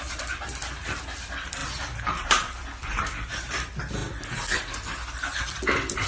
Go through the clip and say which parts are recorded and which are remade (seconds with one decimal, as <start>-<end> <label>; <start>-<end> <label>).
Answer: 0.0-1.6 remade; 1.6-2.3 recorded; 2.3-4.0 remade; 4.0-5.4 recorded; 5.4-6.1 remade